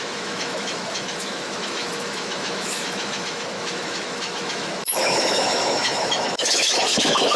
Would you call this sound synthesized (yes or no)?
yes